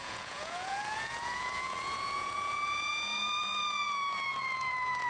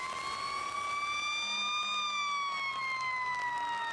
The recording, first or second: second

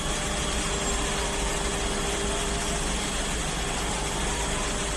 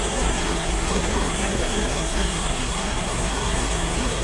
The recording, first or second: first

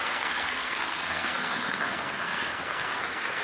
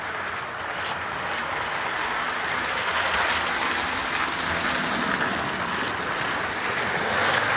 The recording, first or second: second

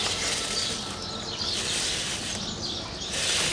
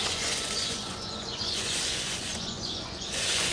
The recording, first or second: first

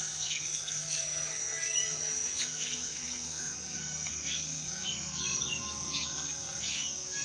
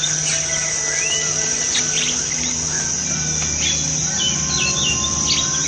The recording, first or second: second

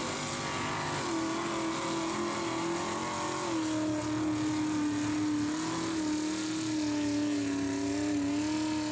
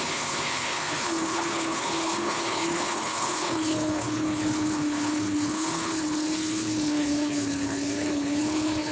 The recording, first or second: first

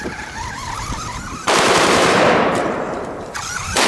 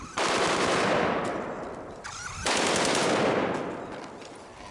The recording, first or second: second